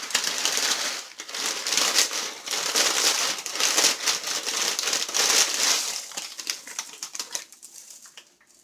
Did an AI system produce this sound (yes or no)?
no